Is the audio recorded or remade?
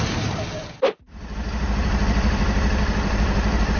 remade